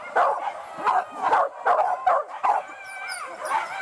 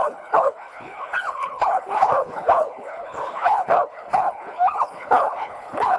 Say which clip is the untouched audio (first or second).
first